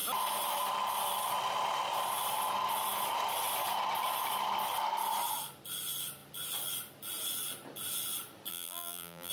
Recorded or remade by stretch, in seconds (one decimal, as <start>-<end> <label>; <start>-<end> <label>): 0.0-8.5 recorded; 8.5-9.3 remade